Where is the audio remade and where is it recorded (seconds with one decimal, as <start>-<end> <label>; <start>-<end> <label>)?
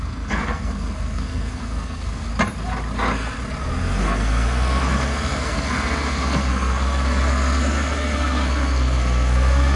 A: 0.0-2.3 remade; 2.3-3.6 recorded; 3.6-9.8 remade